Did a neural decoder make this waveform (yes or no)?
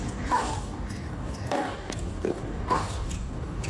yes